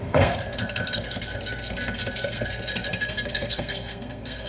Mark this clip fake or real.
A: fake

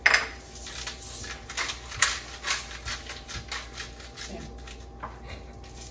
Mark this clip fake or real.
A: real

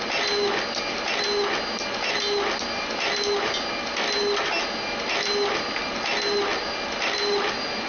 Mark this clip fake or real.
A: real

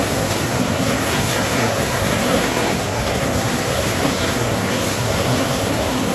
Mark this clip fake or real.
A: fake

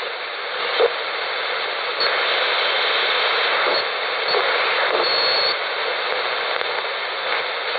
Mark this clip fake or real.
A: real